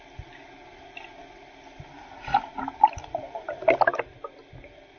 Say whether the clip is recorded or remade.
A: recorded